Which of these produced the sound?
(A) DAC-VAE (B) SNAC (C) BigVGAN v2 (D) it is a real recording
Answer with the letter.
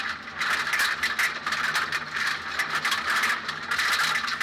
D